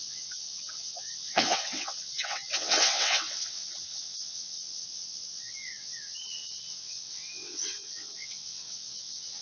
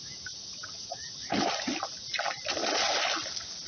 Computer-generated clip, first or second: first